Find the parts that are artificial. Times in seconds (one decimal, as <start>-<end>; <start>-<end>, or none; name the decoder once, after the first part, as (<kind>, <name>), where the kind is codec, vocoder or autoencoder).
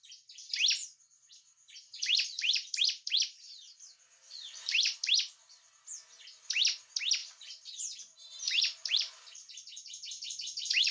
0.8-5.7 (vocoder, BigVGAN v2); 7.2-10.9